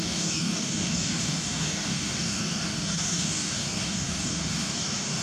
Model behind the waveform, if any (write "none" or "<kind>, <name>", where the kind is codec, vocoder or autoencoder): codec, DAC